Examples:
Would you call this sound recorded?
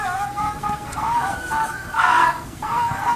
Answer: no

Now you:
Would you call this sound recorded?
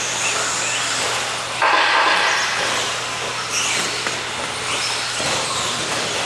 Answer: yes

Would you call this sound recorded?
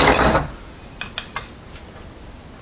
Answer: yes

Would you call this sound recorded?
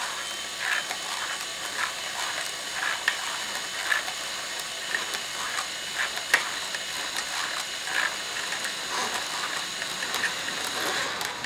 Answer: yes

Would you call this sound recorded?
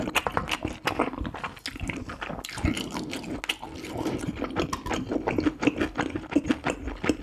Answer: yes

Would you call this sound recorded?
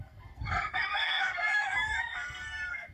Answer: no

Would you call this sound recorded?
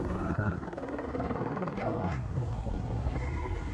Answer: no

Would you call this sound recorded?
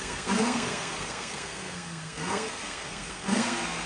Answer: no